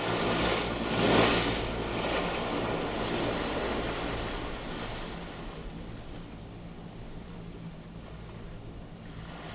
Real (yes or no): yes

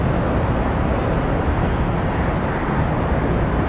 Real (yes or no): yes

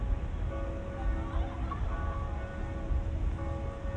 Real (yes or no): yes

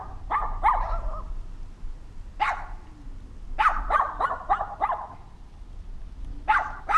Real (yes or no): yes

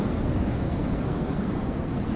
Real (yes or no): no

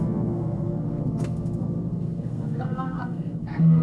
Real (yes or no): no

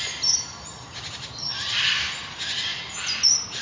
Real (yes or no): yes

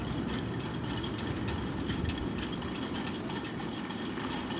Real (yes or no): yes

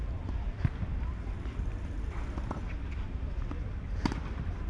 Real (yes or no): no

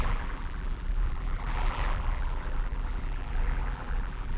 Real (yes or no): no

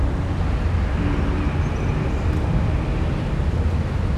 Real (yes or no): yes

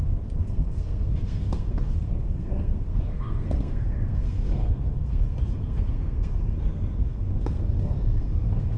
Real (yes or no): no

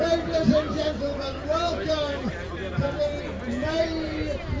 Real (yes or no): yes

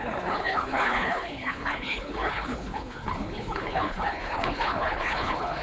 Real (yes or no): no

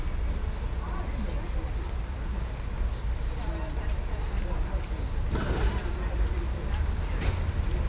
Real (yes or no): yes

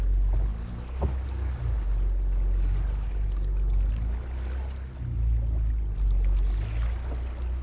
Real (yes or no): yes